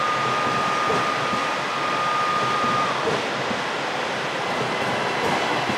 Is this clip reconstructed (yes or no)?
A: no